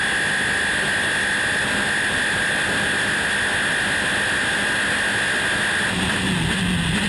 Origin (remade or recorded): recorded